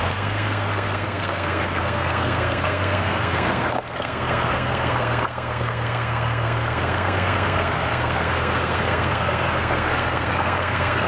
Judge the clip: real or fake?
fake